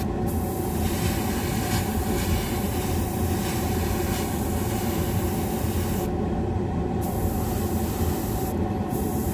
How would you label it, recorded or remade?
remade